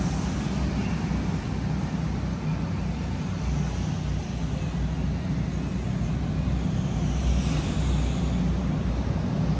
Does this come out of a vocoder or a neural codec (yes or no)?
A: no